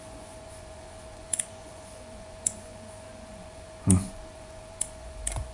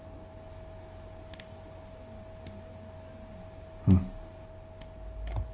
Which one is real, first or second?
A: second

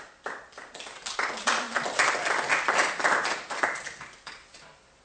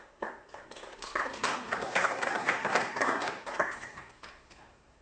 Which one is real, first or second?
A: first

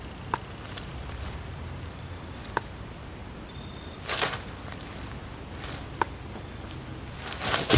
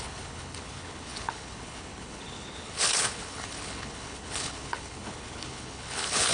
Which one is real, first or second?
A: first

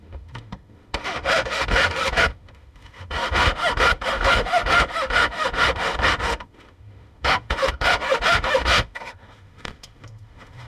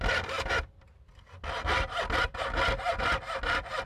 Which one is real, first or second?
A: second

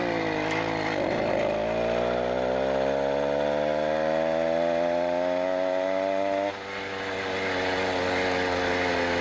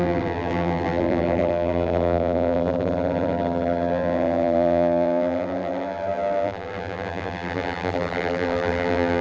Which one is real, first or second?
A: first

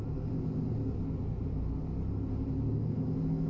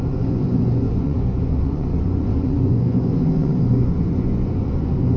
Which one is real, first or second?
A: first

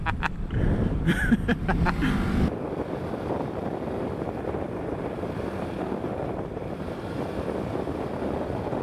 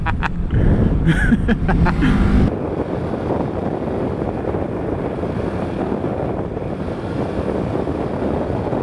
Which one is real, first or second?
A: second